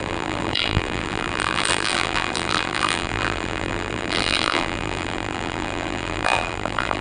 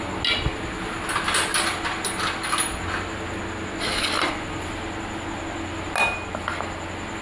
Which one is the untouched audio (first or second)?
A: second